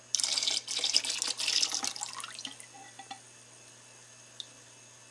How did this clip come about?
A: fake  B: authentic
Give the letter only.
B